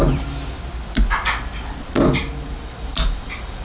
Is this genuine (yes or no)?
yes